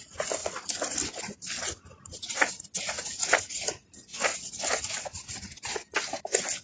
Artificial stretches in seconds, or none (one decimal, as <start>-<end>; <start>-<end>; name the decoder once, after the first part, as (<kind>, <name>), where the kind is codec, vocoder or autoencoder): none